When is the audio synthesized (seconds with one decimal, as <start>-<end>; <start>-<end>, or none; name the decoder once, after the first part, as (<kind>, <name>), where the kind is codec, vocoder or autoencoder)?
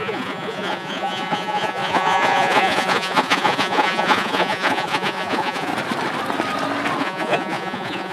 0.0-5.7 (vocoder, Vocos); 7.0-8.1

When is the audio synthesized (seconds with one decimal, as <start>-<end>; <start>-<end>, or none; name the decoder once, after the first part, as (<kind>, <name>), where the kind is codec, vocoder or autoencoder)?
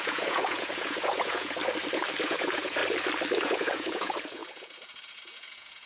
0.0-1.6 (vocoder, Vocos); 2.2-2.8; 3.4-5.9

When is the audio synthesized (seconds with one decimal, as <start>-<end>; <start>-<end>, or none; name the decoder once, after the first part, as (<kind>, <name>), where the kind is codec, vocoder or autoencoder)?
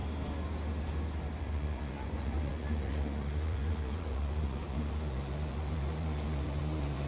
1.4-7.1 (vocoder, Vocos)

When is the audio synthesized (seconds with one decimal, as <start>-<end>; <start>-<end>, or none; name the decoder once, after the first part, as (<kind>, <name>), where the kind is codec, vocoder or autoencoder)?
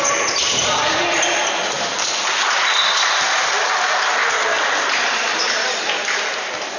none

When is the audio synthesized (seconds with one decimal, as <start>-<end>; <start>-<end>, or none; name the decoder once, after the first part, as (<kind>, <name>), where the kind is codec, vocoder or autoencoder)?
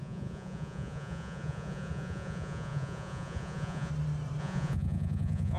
0.0-3.9 (vocoder, Vocos); 4.4-5.6